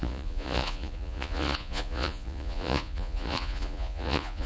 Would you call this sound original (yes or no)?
no